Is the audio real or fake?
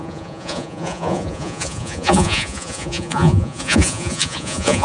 fake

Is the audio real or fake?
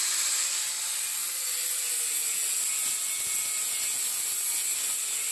real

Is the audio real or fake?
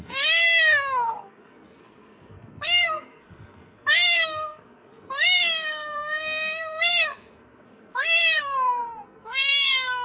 fake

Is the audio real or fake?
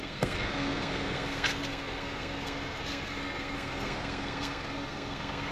fake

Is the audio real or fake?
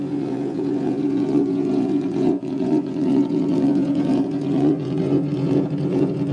fake